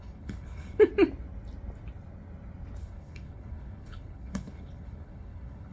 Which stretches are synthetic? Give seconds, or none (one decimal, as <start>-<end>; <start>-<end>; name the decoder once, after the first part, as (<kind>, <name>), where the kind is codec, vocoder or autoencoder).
0.0-0.9 (codec, HILCodec); 2.8-5.7

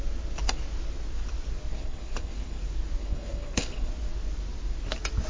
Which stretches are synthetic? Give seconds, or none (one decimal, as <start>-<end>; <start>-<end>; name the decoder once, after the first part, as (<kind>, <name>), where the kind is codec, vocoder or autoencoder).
1.7-2.6 (codec, HILCodec); 3.0-3.9

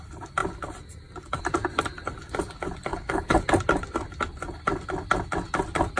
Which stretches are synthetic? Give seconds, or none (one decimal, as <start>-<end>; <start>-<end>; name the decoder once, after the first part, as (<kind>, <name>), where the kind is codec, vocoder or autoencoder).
2.9-3.4 (codec, HILCodec)